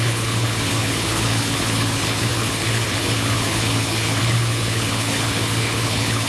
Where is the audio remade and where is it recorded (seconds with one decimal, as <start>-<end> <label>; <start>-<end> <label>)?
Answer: 0.0-6.3 remade